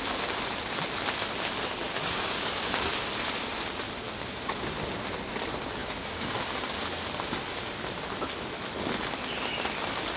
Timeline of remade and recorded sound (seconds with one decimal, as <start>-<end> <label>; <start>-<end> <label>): 0.0-1.8 recorded; 1.8-2.6 remade; 2.6-5.8 recorded; 5.8-6.6 remade; 6.6-10.2 recorded